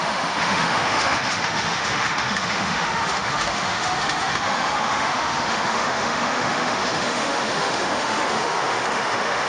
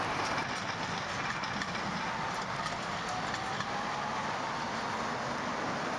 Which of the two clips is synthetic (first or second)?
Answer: first